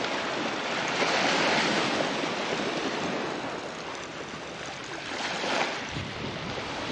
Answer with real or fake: real